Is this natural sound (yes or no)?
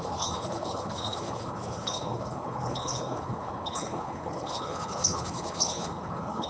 no